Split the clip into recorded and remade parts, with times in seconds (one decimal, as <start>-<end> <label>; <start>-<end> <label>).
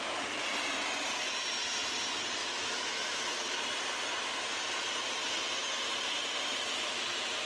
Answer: 0.0-2.4 recorded; 2.4-3.6 remade; 3.6-7.5 recorded